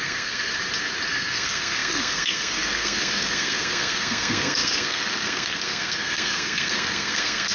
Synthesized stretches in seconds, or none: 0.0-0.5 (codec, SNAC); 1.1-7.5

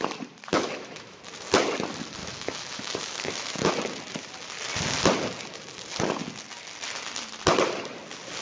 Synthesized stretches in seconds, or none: 0.5-1.2 (autoencoder, DAC-VAE); 2.2-3.7

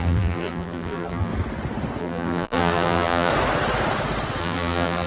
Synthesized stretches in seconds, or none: 0.0-1.3 (vocoder, BigVGAN v2); 2.0-3.3; 4.4-5.1

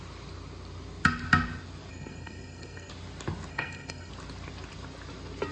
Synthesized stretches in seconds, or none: 1.9-2.9 (codec, SNAC); 3.5-4.1

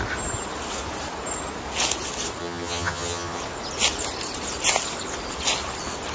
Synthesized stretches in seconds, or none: 2.4-3.4 (vocoder, HiFi-GAN)

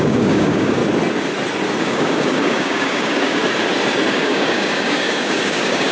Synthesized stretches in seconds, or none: 0.0-0.8 (codec, DAC); 1.8-3.4; 4.1-5.9

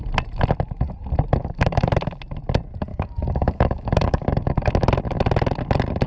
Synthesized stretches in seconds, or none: 1.4-1.9 (codec, DAC); 2.9-4.7